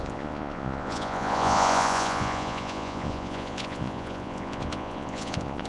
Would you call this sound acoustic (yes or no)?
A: no